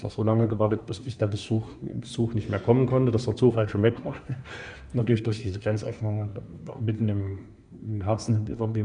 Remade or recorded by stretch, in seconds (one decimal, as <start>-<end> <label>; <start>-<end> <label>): 0.0-2.1 remade; 2.1-3.5 recorded; 3.5-4.5 remade; 4.5-5.0 recorded; 5.0-8.8 remade